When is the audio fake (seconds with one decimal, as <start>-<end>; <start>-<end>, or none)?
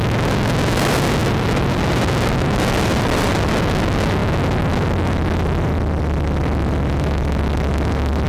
1.2-2.0; 2.9-3.5